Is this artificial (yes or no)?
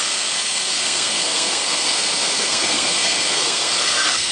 yes